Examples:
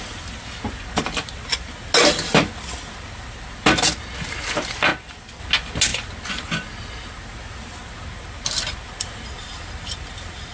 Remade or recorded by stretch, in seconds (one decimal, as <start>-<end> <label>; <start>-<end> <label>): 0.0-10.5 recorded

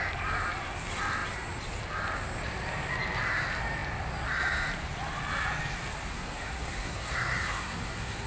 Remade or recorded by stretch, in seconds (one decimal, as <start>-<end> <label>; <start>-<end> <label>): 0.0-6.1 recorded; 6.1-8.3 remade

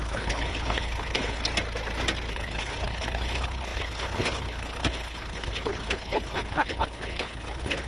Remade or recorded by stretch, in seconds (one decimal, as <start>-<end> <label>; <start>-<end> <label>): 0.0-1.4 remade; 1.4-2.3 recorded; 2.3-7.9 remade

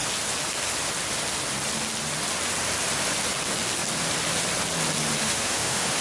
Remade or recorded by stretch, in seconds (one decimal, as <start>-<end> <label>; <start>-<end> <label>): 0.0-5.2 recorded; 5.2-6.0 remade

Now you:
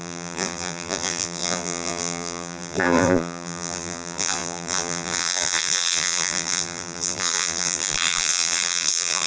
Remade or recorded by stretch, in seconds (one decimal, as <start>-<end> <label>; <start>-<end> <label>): 0.0-9.3 remade

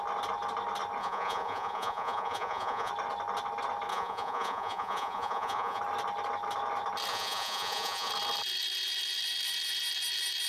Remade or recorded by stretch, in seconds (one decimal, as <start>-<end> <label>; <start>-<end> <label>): 0.0-1.0 recorded; 1.0-2.9 remade; 2.9-3.9 recorded; 3.9-5.8 remade; 5.8-7.1 recorded; 7.1-8.1 remade; 8.1-10.5 recorded